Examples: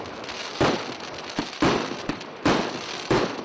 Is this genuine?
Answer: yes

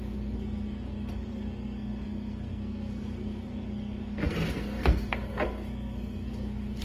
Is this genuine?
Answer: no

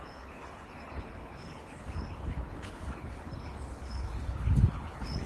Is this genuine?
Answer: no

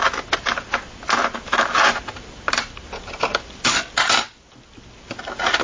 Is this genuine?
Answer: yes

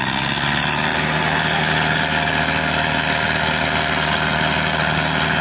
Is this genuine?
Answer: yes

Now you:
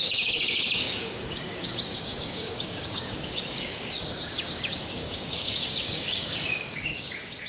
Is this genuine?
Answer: no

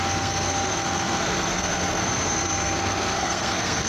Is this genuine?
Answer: no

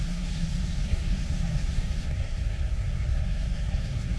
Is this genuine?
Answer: no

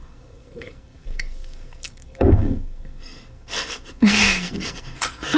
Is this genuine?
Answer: no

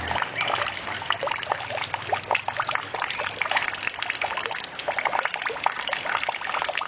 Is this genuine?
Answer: yes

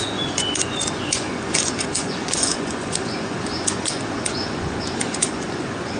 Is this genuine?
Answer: no